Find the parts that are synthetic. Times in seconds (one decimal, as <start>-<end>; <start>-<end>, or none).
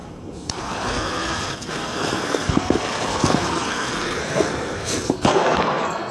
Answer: 0.0-6.1